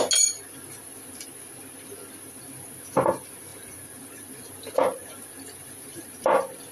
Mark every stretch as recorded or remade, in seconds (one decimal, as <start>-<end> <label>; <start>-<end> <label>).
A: 0.0-3.5 recorded; 3.5-6.2 remade; 6.2-6.7 recorded

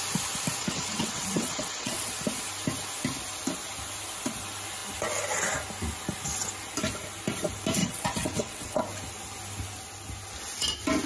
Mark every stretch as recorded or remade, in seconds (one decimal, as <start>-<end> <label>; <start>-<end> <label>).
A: 0.0-0.6 recorded; 0.6-2.1 remade; 2.1-7.8 recorded; 7.8-8.8 remade; 8.8-11.1 recorded